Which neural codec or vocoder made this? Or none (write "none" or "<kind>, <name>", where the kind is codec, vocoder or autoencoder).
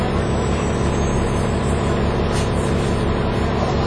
none